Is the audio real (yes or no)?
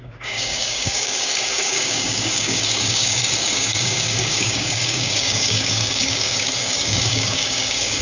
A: no